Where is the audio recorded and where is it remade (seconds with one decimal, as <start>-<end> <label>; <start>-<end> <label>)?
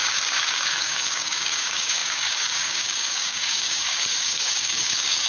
0.0-5.3 remade